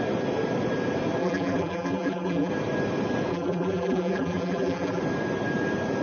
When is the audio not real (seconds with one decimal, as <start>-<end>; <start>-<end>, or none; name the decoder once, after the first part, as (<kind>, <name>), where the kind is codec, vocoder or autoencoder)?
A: 1.2-2.5 (vocoder, BigVGAN v2); 3.3-5.0